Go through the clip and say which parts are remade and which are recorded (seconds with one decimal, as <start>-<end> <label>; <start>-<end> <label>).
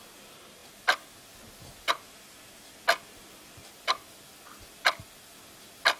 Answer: 0.0-6.0 recorded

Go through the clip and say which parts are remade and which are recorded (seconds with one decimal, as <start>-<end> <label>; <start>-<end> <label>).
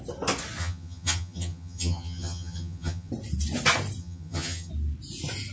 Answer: 0.0-0.6 recorded; 0.6-3.1 remade; 3.1-4.0 recorded; 4.0-4.7 remade; 4.7-5.5 recorded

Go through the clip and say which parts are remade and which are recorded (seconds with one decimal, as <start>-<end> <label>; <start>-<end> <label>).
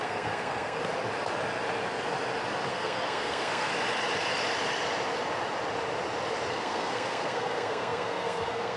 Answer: 0.0-0.8 remade; 0.8-2.7 recorded; 2.7-3.7 remade; 3.7-6.5 recorded; 6.5-8.8 remade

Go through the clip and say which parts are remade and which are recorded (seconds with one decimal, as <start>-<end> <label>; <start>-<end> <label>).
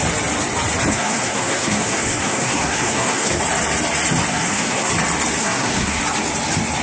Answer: 0.0-0.9 recorded; 0.9-3.4 remade; 3.4-4.3 recorded; 4.3-4.9 remade; 4.9-5.4 recorded; 5.4-6.0 remade; 6.0-6.8 recorded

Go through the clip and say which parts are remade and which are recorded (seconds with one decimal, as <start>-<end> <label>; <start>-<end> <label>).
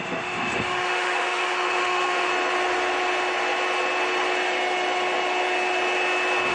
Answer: 0.0-2.3 remade; 2.3-6.5 recorded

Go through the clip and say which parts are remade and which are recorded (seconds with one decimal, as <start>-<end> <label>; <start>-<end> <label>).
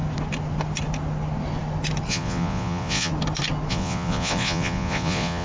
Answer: 0.0-2.1 recorded; 2.1-3.1 remade; 3.1-3.7 recorded; 3.7-5.4 remade